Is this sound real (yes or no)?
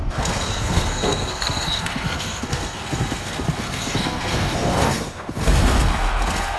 no